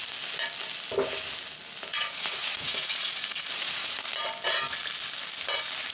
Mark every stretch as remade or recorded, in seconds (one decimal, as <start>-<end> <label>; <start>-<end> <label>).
0.0-1.9 recorded; 1.9-4.1 remade; 4.1-5.9 recorded